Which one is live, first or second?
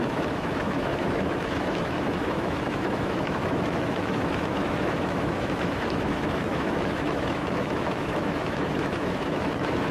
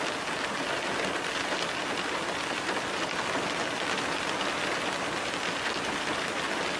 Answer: second